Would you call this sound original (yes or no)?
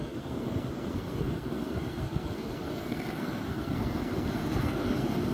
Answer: no